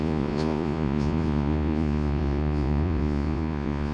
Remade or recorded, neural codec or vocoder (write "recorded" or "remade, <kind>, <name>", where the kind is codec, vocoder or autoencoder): remade, vocoder, Vocos